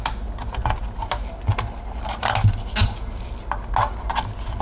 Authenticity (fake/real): real